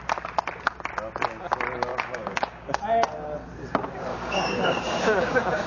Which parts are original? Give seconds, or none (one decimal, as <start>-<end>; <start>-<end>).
0.0-1.9; 2.8-4.1

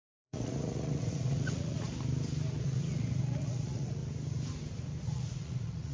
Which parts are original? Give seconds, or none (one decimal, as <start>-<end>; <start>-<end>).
1.9-2.6; 4.0-5.0

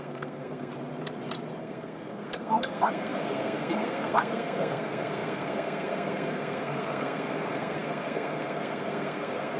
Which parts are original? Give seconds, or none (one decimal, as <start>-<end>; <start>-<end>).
0.7-1.6

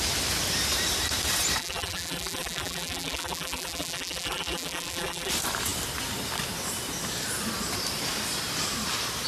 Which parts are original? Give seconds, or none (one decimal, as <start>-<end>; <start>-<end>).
0.0-1.6; 5.3-9.3

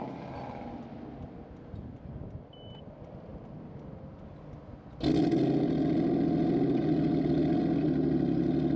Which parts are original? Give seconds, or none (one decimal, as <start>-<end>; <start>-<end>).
0.0-8.8

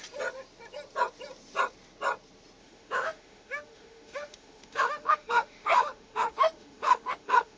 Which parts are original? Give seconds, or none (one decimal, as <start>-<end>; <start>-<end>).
0.0-2.6

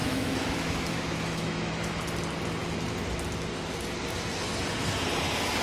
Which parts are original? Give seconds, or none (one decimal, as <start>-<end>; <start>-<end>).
2.0-5.6

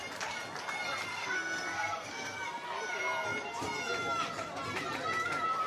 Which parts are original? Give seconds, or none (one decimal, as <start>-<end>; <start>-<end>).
0.0-1.1; 2.4-5.7